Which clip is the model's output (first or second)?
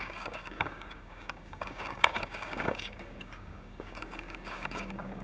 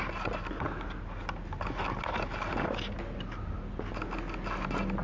first